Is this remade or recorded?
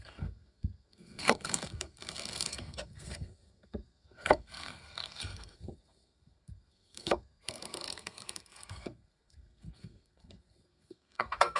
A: remade